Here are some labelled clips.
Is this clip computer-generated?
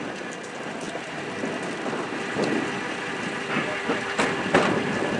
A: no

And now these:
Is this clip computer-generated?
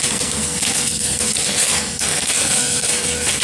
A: yes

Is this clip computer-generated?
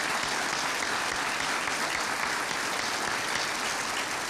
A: no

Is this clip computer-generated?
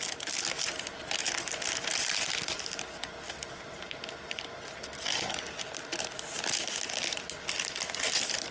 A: no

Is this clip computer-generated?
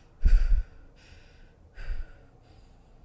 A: no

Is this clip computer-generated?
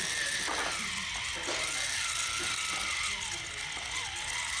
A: no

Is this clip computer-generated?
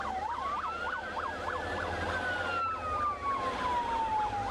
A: no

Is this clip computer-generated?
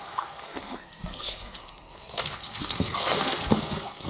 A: yes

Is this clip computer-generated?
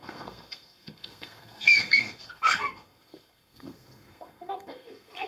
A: yes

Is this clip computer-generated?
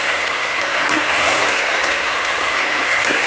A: yes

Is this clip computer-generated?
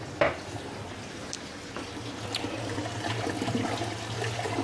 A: no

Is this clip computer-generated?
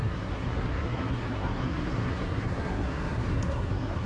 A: yes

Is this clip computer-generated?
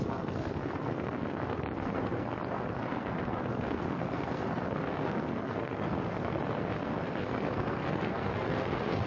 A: yes